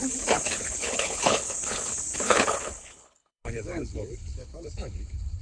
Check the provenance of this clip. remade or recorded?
remade